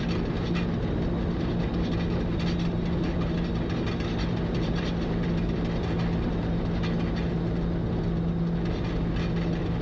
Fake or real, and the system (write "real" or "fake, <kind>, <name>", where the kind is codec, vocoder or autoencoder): real